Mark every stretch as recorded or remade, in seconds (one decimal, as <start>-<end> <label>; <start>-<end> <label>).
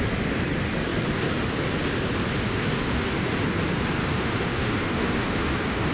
0.0-2.3 recorded; 2.3-3.3 remade; 3.3-4.0 recorded; 4.0-5.9 remade